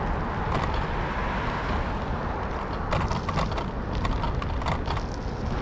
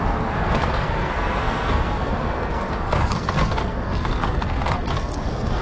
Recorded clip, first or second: first